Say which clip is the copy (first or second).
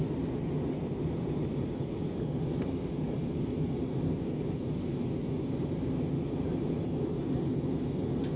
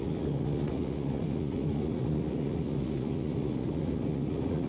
second